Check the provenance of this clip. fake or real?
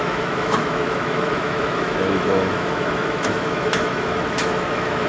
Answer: fake